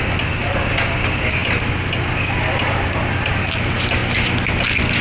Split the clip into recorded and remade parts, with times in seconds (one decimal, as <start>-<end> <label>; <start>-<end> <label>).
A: 0.0-5.0 recorded